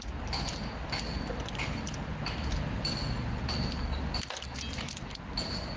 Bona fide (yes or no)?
yes